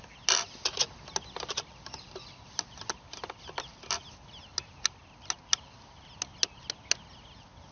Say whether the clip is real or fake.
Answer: real